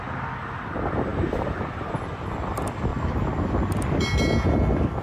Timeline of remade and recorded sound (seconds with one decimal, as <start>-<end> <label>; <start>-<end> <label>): 0.0-1.1 recorded; 1.1-1.9 remade; 1.9-5.0 recorded

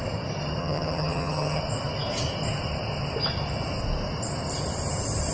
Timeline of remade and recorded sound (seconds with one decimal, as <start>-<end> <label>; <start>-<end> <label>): 0.0-0.6 recorded; 0.6-1.6 remade; 1.6-5.3 recorded

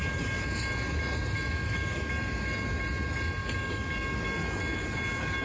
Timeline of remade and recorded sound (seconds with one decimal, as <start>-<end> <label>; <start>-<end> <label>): 0.0-5.4 recorded

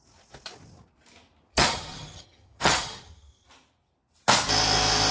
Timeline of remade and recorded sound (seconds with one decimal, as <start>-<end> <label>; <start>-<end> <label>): 0.0-1.5 recorded; 1.5-3.5 remade; 3.5-5.1 recorded

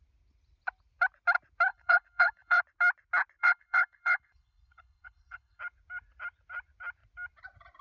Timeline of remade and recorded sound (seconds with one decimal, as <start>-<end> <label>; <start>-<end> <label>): 0.0-1.7 recorded; 1.7-2.6 remade; 2.6-3.4 recorded; 3.4-5.6 remade; 5.6-7.8 recorded

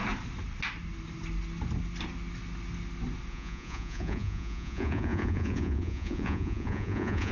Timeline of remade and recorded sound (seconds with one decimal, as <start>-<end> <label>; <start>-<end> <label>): 0.0-3.3 recorded; 3.3-7.3 remade

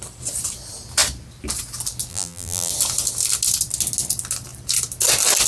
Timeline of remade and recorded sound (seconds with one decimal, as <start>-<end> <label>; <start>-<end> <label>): 0.0-2.1 recorded; 2.1-2.7 remade; 2.7-5.5 recorded

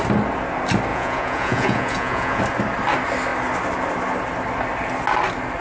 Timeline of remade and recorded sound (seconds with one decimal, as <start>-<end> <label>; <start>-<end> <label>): 0.0-0.9 recorded; 0.9-2.4 remade; 2.4-5.6 recorded